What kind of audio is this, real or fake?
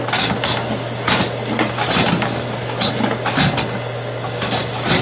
real